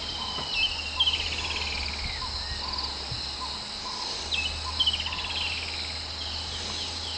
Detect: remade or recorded recorded